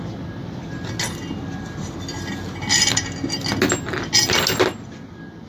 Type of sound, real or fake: real